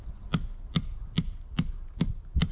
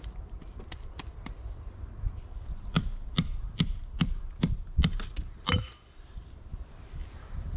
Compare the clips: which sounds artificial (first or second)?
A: second